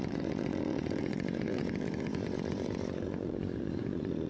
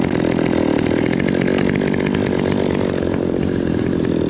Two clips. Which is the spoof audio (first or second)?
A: first